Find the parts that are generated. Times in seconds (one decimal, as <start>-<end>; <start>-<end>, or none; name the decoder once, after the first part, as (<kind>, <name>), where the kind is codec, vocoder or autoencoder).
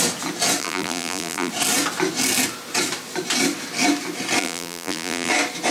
0.6-1.5 (vocoder, BigVGAN v2); 4.4-5.3